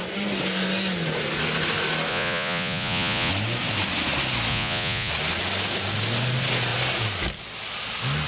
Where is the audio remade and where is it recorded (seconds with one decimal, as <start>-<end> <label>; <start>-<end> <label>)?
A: 0.0-2.1 recorded; 2.1-3.3 remade; 3.3-4.5 recorded; 4.5-5.1 remade; 5.1-8.3 recorded